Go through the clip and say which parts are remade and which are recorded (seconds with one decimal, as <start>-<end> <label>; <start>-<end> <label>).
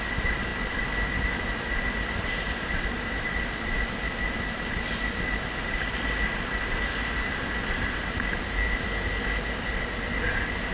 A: 0.0-10.7 recorded